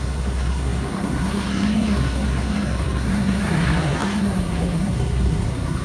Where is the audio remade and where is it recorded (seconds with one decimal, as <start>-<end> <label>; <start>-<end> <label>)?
0.0-5.8 remade